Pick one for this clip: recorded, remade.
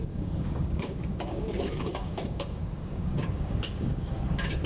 remade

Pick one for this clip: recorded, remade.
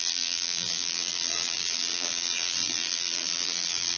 remade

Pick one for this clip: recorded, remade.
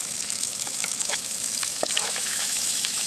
remade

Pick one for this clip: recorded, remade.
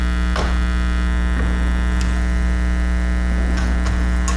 recorded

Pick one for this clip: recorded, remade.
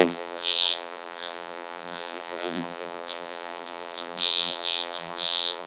remade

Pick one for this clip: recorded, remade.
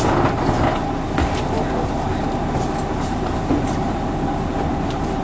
recorded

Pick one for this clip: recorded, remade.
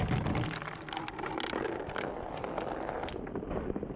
recorded